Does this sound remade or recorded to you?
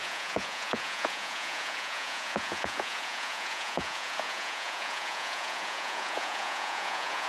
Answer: remade